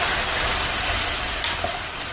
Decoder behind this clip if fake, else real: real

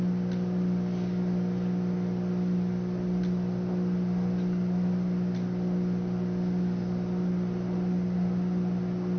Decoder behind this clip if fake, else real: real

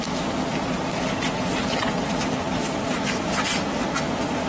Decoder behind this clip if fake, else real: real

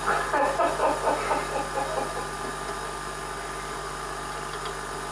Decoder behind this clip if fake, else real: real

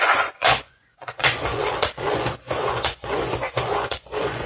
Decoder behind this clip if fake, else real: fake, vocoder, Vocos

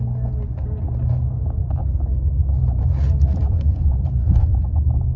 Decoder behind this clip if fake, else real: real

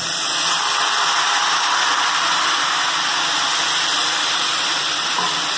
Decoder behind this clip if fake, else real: real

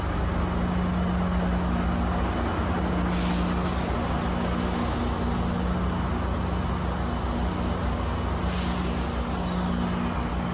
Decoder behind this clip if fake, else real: real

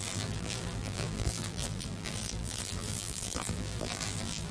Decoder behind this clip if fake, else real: fake, vocoder, BigVGAN v2